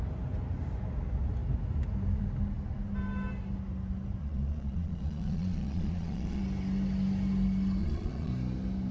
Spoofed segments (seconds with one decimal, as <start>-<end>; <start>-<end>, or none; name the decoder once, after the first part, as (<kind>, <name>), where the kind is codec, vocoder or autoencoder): 4.2-6.4 (vocoder, Vocos); 7.8-8.3